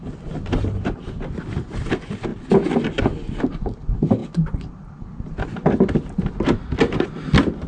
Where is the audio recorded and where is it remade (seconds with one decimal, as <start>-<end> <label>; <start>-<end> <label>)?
0.0-7.7 recorded